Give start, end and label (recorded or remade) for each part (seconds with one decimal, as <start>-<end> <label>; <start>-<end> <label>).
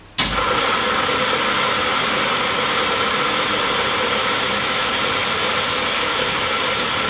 0.0-4.2 recorded; 4.2-4.9 remade; 4.9-7.1 recorded